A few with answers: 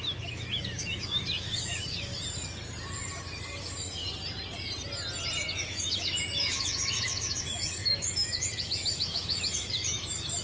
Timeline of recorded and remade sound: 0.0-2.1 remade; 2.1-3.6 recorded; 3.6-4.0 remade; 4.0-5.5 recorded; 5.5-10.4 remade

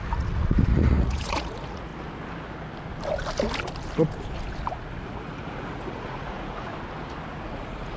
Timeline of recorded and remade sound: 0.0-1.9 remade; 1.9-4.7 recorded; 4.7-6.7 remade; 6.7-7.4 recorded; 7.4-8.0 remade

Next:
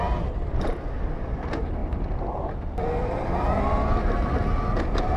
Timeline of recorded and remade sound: 0.0-5.2 recorded

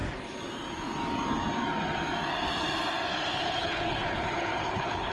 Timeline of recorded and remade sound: 0.0-3.3 recorded; 3.3-5.1 remade

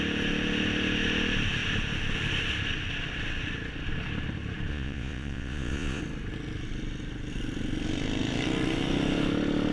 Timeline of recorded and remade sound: 0.0-4.7 recorded; 4.7-6.0 remade; 6.0-9.7 recorded

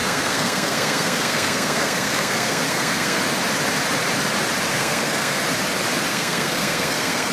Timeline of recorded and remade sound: 0.0-3.2 remade; 3.2-4.7 recorded; 4.7-5.4 remade; 5.4-6.1 recorded; 6.1-7.3 remade